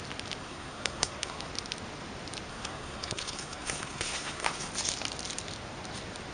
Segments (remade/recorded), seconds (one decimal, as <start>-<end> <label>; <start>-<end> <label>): 0.0-0.4 recorded; 0.4-1.5 remade; 1.5-2.5 recorded; 2.5-4.7 remade; 4.7-6.3 recorded